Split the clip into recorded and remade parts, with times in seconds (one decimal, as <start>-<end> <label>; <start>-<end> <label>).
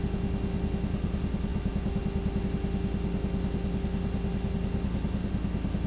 0.0-5.9 recorded